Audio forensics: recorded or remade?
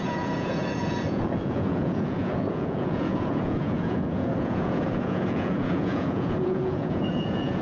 remade